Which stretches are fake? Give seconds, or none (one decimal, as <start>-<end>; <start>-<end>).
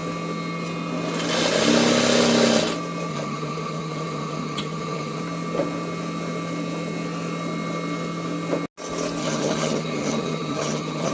3.1-5.2; 9.2-11.1